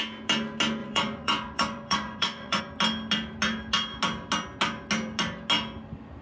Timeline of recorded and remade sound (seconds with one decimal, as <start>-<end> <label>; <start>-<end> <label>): 0.0-0.8 recorded; 0.8-2.6 remade; 2.6-6.2 recorded